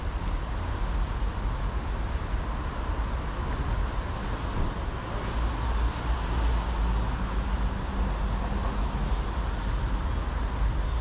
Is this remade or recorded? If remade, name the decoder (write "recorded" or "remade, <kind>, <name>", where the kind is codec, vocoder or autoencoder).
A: recorded